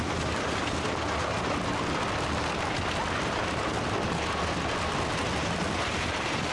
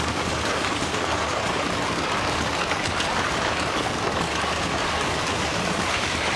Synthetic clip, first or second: second